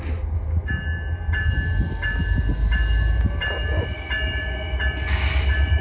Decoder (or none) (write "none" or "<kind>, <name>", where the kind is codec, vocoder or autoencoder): none